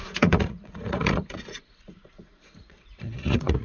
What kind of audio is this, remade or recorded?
remade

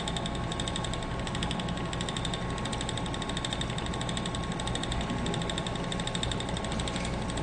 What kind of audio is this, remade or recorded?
recorded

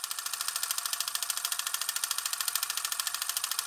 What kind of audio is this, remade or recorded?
recorded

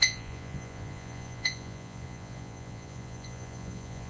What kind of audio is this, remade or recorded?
remade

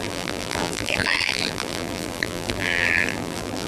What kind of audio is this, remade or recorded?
remade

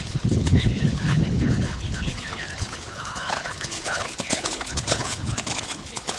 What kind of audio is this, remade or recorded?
remade